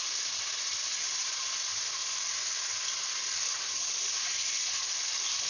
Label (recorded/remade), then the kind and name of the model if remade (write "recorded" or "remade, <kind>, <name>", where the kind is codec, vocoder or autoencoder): recorded